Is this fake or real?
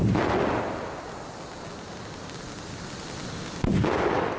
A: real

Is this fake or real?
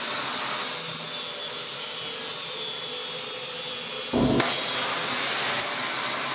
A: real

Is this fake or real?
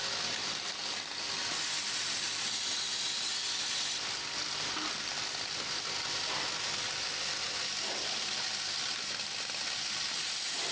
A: real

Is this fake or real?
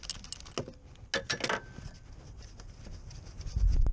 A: real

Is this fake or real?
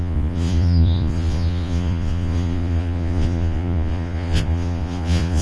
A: fake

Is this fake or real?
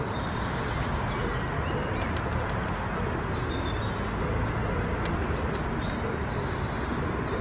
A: real